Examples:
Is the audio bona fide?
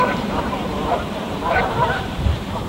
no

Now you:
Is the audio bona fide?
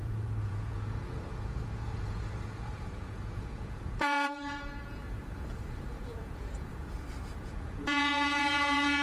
no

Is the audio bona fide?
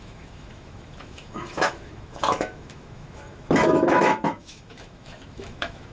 no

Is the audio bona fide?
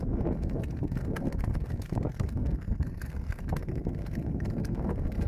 no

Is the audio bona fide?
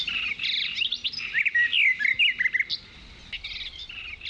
yes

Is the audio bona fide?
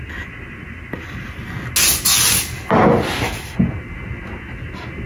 yes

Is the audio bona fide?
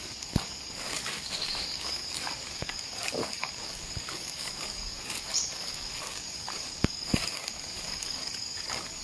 no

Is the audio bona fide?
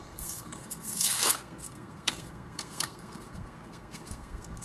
no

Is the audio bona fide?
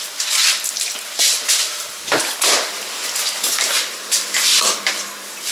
no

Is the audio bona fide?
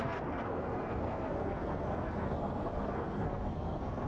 no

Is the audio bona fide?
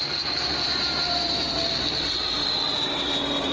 no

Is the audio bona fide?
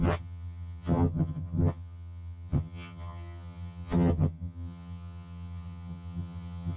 no